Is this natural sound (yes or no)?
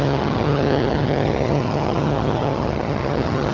no